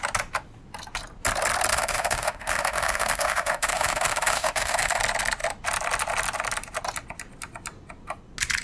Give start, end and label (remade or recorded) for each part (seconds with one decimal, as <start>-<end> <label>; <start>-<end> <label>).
0.0-1.7 recorded; 1.7-5.0 remade; 5.0-8.6 recorded